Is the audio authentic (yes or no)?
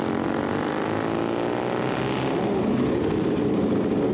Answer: yes